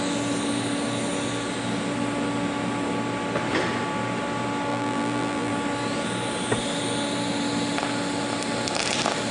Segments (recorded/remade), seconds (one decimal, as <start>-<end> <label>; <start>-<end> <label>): 0.0-4.7 recorded; 4.7-5.5 remade; 5.5-9.3 recorded